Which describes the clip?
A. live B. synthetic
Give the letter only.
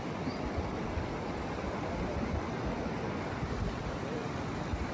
A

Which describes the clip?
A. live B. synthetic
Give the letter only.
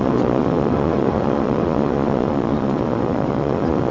B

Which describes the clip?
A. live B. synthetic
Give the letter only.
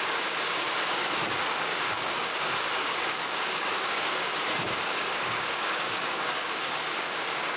B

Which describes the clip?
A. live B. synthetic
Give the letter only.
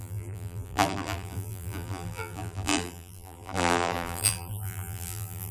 B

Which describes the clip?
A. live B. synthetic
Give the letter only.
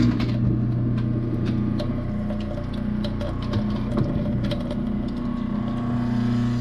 A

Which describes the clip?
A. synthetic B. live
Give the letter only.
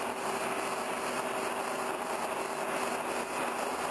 B